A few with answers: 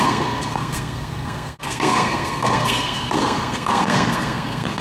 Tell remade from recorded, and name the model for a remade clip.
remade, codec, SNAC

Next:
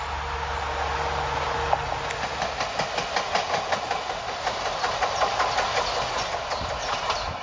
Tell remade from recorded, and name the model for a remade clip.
recorded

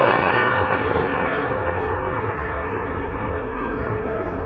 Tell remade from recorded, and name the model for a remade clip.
remade, codec, SNAC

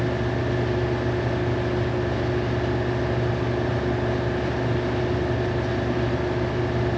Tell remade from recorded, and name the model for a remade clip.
recorded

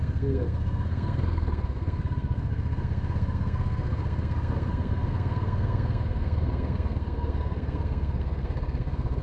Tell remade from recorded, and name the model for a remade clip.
remade, codec, SNAC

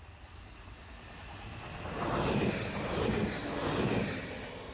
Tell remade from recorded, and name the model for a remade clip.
recorded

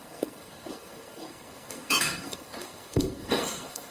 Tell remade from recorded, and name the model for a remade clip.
remade, codec, SNAC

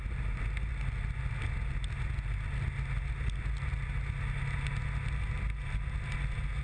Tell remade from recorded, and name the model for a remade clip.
recorded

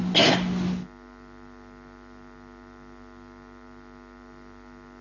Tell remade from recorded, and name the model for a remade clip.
recorded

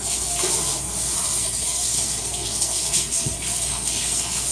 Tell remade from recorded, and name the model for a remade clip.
remade, codec, SNAC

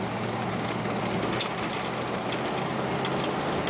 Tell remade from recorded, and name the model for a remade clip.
recorded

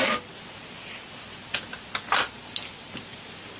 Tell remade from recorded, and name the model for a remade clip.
recorded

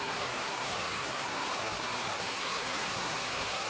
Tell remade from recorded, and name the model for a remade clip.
remade, codec, SNAC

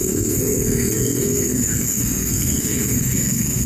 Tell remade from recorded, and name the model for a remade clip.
remade, codec, SNAC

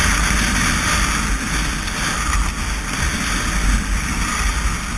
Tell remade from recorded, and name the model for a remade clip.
recorded